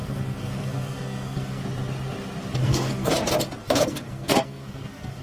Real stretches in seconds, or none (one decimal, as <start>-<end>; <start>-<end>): 1.6-2.6; 3.1-3.6